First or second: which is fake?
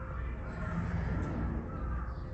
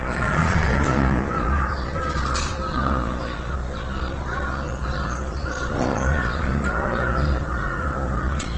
second